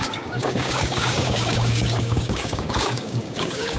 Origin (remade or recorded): remade